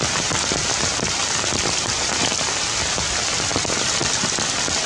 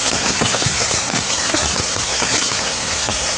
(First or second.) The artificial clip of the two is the second